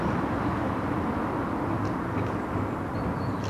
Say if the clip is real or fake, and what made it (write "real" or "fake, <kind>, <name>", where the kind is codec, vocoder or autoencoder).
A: real